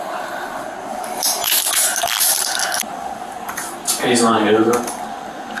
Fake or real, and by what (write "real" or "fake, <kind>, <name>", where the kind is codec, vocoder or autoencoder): real